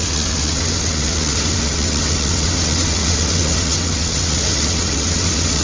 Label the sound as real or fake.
fake